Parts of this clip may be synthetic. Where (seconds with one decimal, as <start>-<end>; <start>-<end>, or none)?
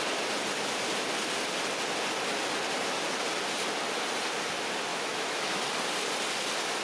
4.9-5.6